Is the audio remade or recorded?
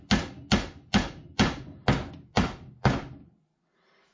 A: recorded